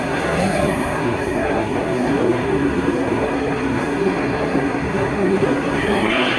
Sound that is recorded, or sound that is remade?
remade